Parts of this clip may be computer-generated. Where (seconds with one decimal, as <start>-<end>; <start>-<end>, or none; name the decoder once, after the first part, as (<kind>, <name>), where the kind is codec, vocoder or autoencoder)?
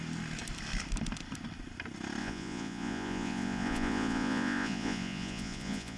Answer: 2.2-6.0 (vocoder, Vocos)